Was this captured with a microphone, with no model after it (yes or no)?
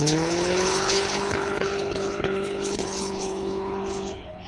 no